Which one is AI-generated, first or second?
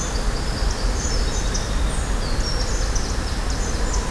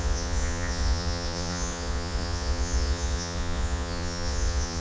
second